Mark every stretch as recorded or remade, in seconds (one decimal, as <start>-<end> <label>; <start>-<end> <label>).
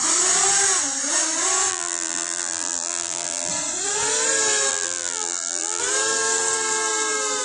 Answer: 0.0-1.7 recorded; 1.7-3.5 remade; 3.5-4.7 recorded; 4.7-5.8 remade; 5.8-7.4 recorded